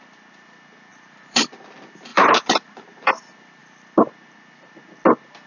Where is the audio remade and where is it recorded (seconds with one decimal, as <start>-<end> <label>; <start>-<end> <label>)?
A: 0.0-0.9 recorded; 0.9-1.4 remade; 1.4-2.1 recorded; 2.1-3.1 remade; 3.1-3.6 recorded; 3.6-4.1 remade; 4.1-5.5 recorded